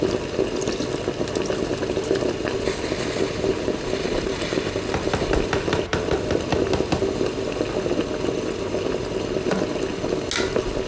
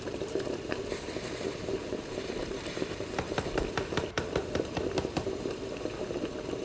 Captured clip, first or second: first